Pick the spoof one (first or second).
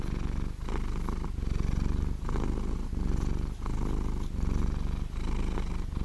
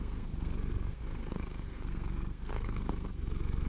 second